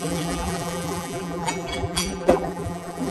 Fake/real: fake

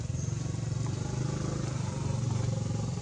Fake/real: real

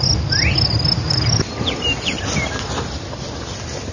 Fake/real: real